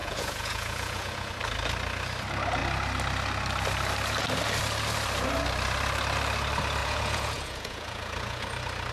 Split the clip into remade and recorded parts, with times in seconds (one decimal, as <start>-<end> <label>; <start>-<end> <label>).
0.0-1.3 remade; 1.3-6.8 recorded; 6.8-8.5 remade; 8.5-8.9 recorded